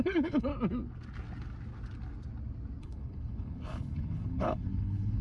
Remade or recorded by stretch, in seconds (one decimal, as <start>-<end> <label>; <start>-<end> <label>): 0.0-0.5 remade; 0.5-2.8 recorded; 2.8-5.2 remade